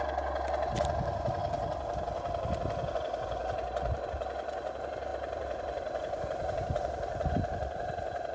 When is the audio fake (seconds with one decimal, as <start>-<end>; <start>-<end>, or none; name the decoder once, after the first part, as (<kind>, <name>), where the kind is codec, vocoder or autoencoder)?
1.4-2.9 (vocoder, BigVGAN v2); 5.1-7.3